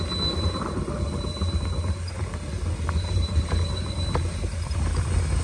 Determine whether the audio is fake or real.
real